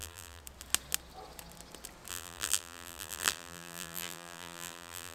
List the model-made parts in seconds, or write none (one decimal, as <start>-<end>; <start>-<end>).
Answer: 0.0-0.4; 2.1-5.1